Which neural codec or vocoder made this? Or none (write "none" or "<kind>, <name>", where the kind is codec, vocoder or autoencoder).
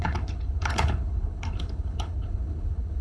codec, HILCodec